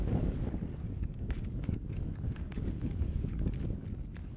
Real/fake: fake